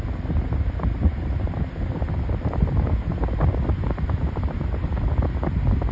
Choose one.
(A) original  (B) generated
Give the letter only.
A